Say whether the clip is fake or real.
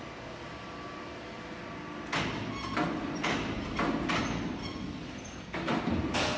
real